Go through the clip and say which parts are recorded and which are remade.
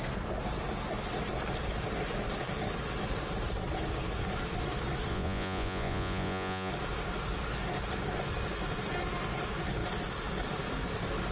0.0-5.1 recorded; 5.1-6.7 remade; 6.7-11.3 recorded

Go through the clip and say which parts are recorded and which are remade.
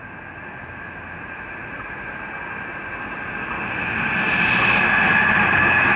0.0-6.0 recorded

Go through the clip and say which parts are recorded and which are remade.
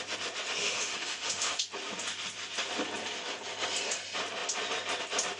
0.0-0.6 recorded; 0.6-1.6 remade; 1.6-5.4 recorded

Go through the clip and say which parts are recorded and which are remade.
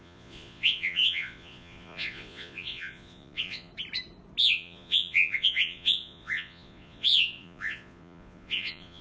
0.0-3.7 remade; 3.7-4.4 recorded; 4.4-9.0 remade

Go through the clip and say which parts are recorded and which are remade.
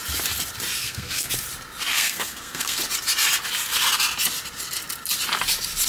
0.0-0.8 recorded; 0.8-1.3 remade; 1.3-1.9 recorded; 1.9-2.8 remade; 2.8-5.9 recorded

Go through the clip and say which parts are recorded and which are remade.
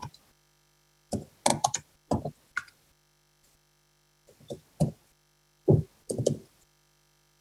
0.0-7.4 recorded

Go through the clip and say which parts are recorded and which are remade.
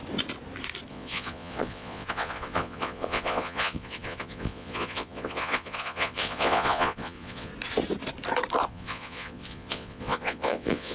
0.0-0.9 recorded; 0.9-7.5 remade; 7.5-8.7 recorded; 8.7-10.9 remade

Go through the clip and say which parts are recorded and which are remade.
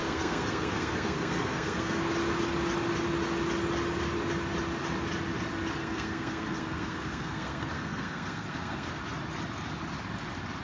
0.0-2.0 remade; 2.0-5.8 recorded; 5.8-9.0 remade; 9.0-10.6 recorded